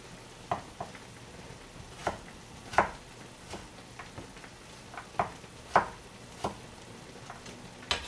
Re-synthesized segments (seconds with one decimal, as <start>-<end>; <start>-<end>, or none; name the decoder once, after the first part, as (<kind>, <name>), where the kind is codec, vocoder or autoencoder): none